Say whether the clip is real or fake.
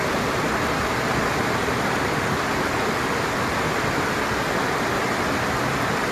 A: real